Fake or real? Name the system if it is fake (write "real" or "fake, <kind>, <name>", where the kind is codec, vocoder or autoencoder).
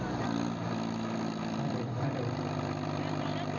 fake, vocoder, BigVGAN v2